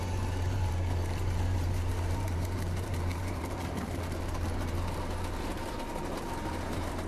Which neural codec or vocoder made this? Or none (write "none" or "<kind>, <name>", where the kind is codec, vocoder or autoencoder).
vocoder, BigVGAN v2